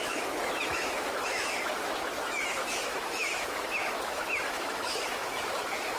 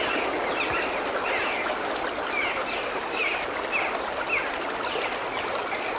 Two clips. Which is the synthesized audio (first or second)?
first